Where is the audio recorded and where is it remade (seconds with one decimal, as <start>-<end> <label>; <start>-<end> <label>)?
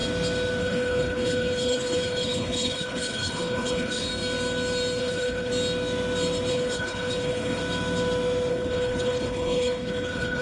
0.0-0.6 recorded; 0.6-4.1 remade; 4.1-5.0 recorded; 5.0-5.5 remade; 5.5-6.5 recorded; 6.5-7.6 remade; 7.6-8.5 recorded; 8.5-10.4 remade